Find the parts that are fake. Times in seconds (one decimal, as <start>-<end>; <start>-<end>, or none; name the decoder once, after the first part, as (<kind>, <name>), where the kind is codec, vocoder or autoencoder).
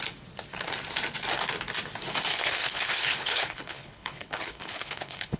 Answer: 2.3-5.4 (codec, HILCodec)